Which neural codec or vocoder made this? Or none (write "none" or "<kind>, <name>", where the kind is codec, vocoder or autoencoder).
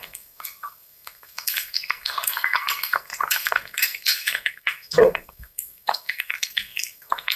codec, SNAC